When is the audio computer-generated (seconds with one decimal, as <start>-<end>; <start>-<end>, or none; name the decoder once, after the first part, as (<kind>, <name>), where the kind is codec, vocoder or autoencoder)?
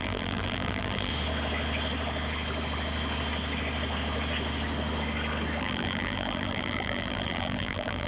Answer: 0.0-1.1 (vocoder, BigVGAN v2); 5.6-8.1